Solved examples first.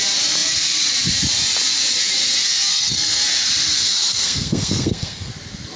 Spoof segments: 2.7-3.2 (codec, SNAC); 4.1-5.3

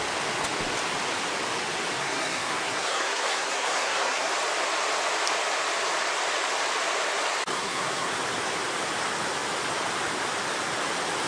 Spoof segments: 2.0-4.3 (codec, SNAC); 7.5-8.1